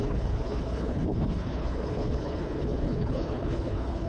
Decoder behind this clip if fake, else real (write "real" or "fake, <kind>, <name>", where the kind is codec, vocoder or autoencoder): fake, codec, HILCodec